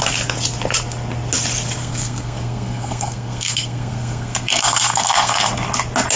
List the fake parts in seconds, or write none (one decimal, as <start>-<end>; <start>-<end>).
1.8-5.5